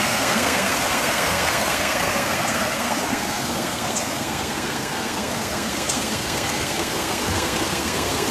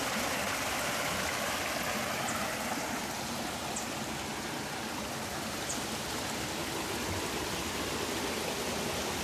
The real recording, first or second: second